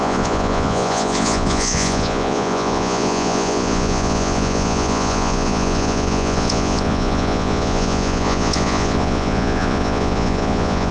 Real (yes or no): no